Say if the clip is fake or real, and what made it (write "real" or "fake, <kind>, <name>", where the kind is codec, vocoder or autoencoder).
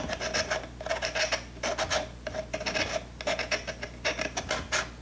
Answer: real